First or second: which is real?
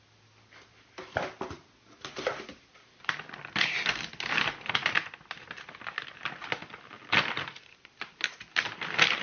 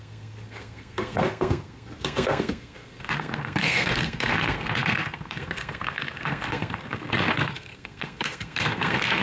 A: first